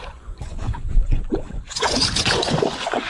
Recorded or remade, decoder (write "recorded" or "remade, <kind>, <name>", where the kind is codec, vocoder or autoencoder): remade, vocoder, Vocos